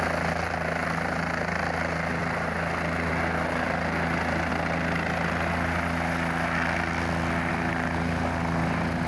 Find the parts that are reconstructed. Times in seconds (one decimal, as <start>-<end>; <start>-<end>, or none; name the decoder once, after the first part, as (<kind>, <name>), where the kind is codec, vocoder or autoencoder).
none